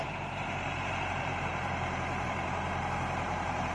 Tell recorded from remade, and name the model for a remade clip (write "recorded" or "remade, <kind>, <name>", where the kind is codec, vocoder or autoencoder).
remade, vocoder, BigVGAN v2